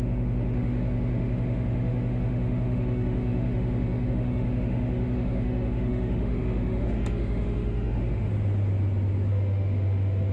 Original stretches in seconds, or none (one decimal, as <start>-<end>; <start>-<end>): 8.3-9.3